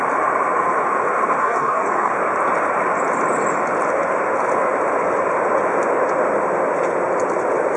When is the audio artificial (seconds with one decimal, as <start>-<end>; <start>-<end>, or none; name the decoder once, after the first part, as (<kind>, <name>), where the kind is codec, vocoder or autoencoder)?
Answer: 1.4-2.1 (codec, DAC)